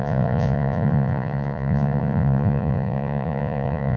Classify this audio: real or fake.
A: fake